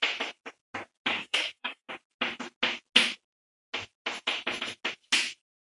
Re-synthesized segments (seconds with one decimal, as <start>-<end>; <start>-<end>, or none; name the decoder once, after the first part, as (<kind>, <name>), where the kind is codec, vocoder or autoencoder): 1.1-1.9 (codec, SNAC)